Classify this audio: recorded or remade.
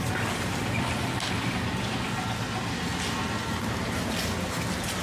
recorded